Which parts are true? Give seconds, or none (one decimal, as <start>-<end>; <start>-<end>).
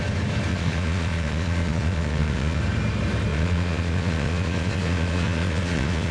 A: 0.0-0.5; 2.6-3.3